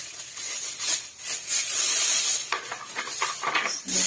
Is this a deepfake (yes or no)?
no